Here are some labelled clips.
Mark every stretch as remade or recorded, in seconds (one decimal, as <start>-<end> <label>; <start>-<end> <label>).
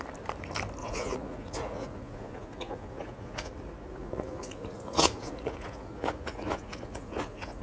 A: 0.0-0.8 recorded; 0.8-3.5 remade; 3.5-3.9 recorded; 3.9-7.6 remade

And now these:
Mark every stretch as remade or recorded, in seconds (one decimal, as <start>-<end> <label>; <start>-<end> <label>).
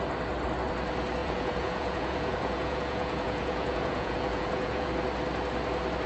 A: 0.0-1.2 recorded; 1.2-4.9 remade; 4.9-6.1 recorded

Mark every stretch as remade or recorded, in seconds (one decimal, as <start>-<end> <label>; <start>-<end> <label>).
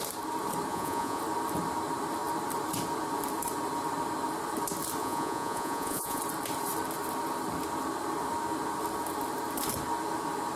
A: 0.0-0.7 recorded; 0.7-1.2 remade; 1.2-5.0 recorded; 5.0-6.2 remade; 6.2-10.6 recorded